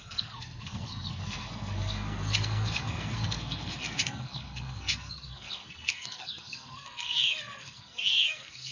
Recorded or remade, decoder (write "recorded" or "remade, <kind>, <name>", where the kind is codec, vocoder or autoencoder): remade, codec, SNAC